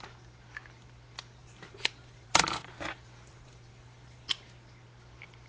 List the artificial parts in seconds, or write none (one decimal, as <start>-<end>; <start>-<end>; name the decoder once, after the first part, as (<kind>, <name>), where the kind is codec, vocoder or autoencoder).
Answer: 1.4-4.3 (vocoder, BigVGAN v2)